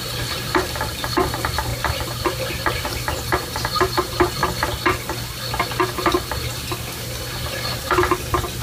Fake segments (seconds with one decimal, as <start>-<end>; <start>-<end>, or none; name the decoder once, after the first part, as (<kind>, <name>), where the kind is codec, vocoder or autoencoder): 0.0-4.4 (vocoder, BigVGAN v2); 7.4-8.6